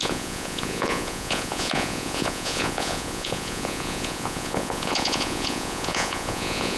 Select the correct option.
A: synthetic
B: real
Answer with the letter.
A